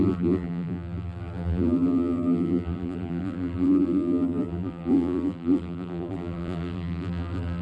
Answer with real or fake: fake